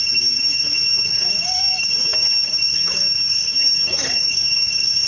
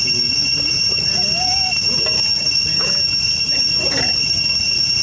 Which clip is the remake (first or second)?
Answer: first